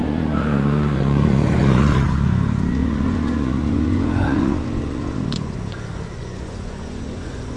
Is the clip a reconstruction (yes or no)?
yes